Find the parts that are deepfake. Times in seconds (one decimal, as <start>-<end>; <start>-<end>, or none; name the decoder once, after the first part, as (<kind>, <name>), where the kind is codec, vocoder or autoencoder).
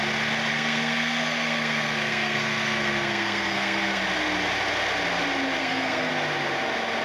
0.5-4.0 (codec, SNAC); 5.6-6.1